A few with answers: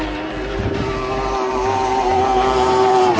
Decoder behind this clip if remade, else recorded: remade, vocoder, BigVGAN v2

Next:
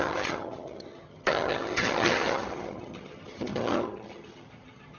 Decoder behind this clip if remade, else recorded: remade, vocoder, HiFi-GAN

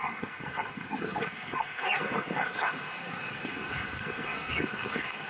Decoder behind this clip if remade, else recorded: remade, codec, SNAC